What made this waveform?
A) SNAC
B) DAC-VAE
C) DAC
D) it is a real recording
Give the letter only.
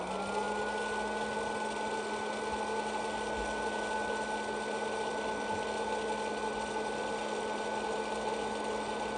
D